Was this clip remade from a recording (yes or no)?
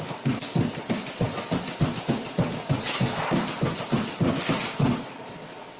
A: no